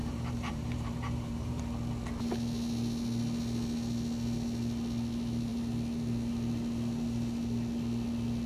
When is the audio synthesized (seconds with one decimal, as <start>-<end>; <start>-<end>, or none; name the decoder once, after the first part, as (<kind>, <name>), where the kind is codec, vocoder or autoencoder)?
0.0-1.6 (vocoder, BigVGAN v2)